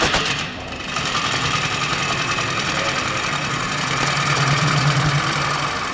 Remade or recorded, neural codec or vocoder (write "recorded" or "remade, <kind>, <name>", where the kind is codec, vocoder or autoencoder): remade, vocoder, BigVGAN v2